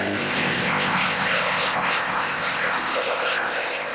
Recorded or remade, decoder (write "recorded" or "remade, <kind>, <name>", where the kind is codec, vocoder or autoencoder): remade, codec, ZipCodec